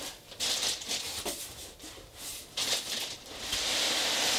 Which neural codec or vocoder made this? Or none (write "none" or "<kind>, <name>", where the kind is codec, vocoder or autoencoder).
none